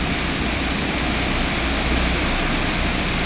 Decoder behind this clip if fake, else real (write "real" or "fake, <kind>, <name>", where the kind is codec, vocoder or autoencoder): real